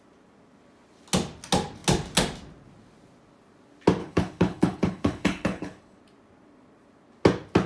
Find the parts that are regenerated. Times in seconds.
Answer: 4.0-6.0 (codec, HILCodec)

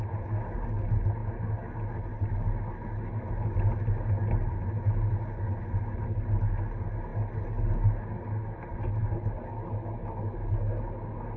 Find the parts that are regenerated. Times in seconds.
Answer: none

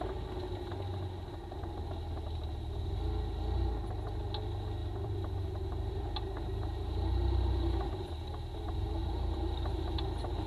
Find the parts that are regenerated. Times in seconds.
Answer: 4.8-7.5 (vocoder, BigVGAN v2); 9.0-10.0

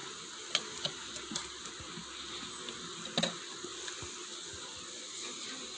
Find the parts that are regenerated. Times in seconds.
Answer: none

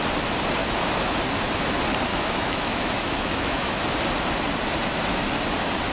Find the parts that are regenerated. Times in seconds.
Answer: 0.6-1.2 (autoencoder, DAC-VAE); 2.1-3.8

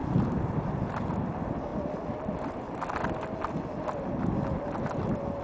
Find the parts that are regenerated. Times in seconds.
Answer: none

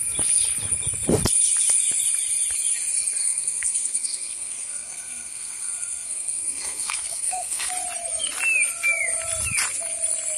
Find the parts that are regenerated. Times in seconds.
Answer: 3.2-7.7 (codec, SNAC)

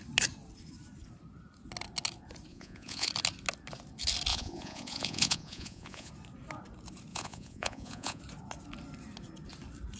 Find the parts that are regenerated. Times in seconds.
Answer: 2.5-3.1 (vocoder, Vocos); 4.3-6.1; 7.1-8.2